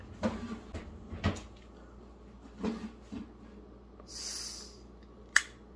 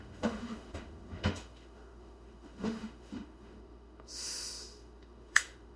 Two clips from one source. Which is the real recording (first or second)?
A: first